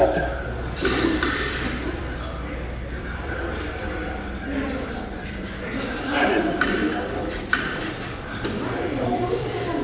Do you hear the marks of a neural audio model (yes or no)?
yes